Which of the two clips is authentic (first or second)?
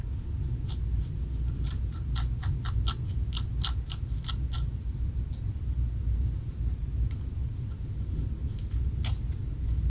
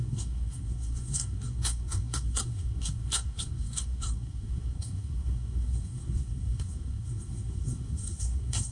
first